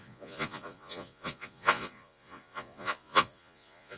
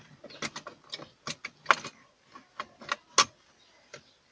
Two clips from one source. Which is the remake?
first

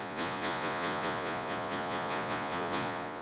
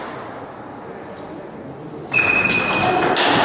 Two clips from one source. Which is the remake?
first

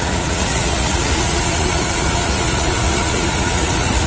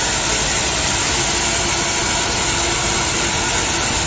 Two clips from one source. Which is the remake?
first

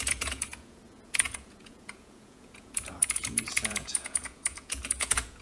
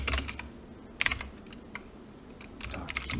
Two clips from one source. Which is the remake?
first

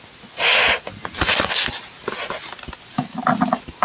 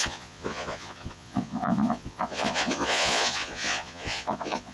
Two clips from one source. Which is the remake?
second